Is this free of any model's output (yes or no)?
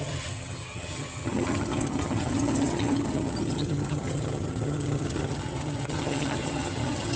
no